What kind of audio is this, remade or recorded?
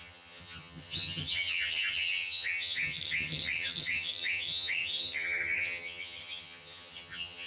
remade